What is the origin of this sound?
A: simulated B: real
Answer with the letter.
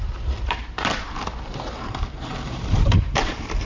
A